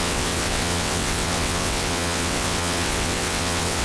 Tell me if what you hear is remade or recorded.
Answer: remade